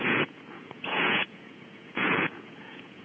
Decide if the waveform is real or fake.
fake